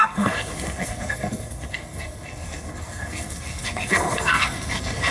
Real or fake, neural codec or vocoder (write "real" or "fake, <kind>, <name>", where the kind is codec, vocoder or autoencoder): fake, codec, SNAC